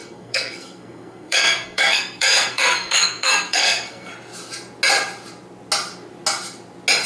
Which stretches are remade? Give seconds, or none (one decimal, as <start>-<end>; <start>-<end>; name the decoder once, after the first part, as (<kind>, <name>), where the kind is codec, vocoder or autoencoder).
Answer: 0.0-4.1 (codec, SNAC)